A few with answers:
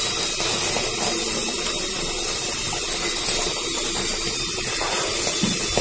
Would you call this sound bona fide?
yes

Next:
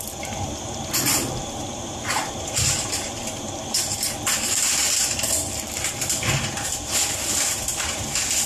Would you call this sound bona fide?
yes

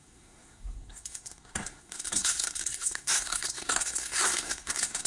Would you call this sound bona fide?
no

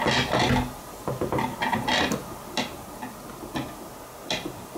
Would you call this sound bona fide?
yes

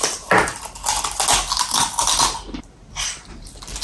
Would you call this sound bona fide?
yes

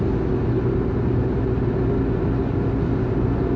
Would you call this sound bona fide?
yes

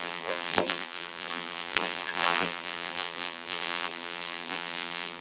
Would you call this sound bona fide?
no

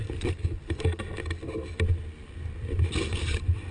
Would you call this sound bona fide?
yes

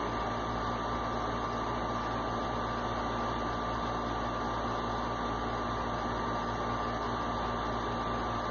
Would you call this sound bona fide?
yes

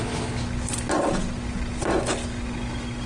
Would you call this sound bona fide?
yes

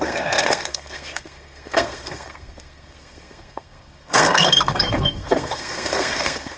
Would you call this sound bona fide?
no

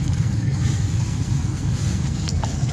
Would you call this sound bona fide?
no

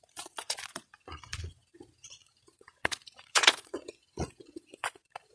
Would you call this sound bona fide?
no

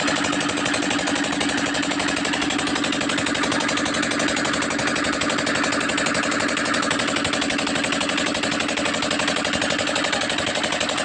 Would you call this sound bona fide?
yes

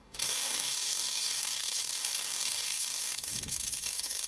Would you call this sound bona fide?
no